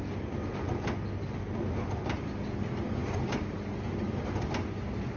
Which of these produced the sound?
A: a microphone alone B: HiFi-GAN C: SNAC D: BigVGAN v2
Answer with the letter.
A